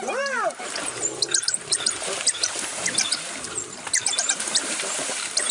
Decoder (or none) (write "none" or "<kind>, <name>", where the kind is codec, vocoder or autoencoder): vocoder, BigVGAN v2